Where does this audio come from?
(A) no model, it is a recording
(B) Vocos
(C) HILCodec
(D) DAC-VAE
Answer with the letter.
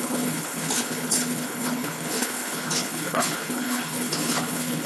C